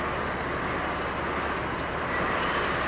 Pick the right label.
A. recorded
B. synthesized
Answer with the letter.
A